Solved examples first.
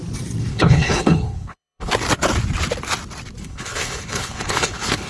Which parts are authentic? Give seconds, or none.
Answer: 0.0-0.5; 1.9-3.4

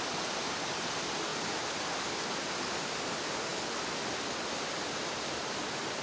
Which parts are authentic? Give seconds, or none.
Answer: 0.0-6.0

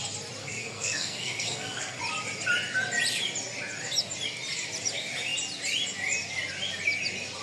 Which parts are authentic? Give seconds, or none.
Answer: 0.0-0.4; 2.0-7.4